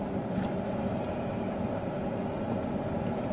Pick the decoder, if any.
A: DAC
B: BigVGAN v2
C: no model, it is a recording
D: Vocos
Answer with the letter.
C